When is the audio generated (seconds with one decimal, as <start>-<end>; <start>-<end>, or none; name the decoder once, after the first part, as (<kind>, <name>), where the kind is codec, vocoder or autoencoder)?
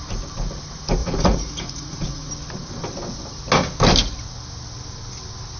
1.0-2.3 (vocoder, Vocos)